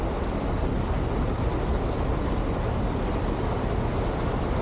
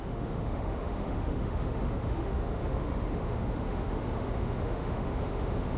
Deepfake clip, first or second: second